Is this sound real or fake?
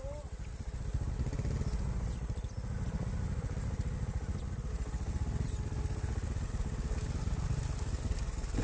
real